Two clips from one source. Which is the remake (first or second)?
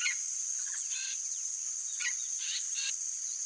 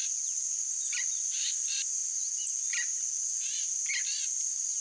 first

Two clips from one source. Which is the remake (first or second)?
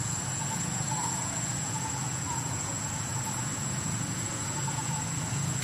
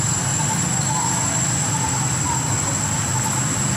first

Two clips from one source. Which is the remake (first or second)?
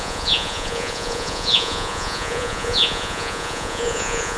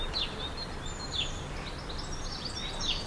first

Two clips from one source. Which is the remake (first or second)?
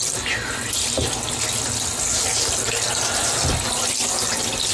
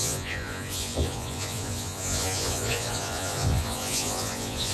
second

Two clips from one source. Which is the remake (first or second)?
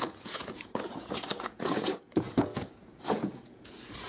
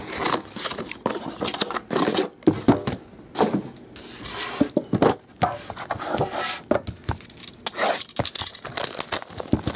first